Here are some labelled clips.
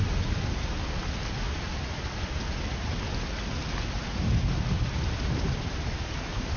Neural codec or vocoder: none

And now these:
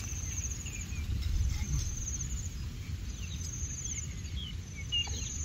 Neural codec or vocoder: none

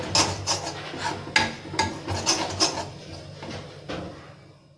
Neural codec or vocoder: none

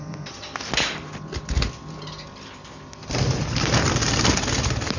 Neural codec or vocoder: none